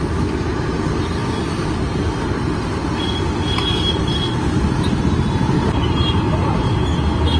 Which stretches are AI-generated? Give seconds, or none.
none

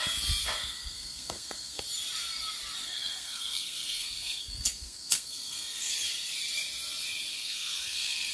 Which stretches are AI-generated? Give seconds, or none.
0.4-1.8 (codec, SNAC); 2.8-5.9; 7.3-8.3

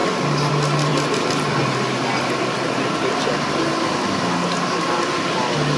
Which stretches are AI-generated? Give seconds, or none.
none